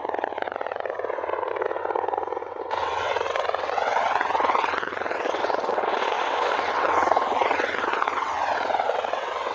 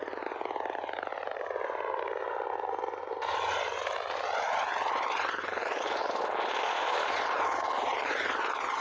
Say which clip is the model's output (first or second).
first